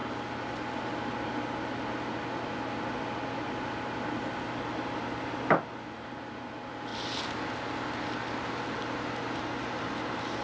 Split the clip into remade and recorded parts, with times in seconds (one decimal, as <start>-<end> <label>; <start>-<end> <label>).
0.0-10.4 recorded